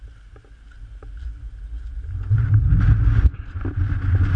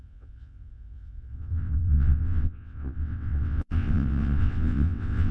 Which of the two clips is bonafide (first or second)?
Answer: first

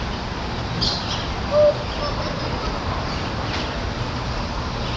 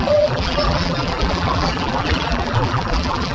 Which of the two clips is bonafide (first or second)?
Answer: first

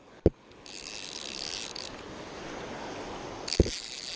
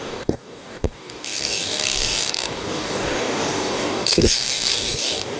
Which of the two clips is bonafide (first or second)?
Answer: first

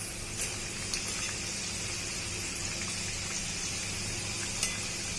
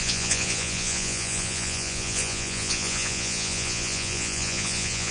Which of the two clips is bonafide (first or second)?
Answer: first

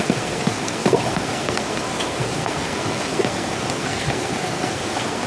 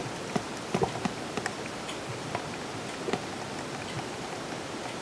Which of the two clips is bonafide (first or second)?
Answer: second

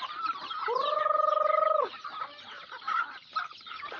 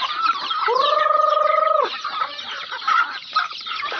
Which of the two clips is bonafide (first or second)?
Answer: first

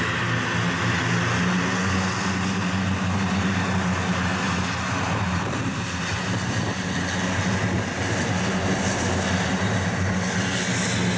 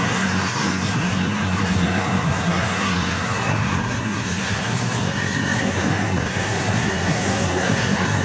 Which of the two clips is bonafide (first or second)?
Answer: first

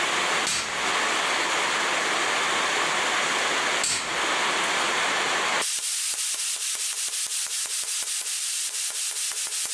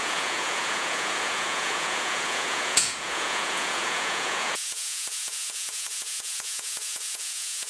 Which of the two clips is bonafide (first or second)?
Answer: first